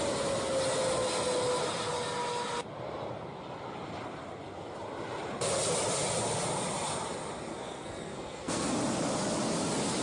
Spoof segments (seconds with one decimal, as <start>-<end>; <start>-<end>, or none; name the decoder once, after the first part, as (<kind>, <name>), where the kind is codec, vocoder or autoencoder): 7.5-8.7 (codec, SNAC)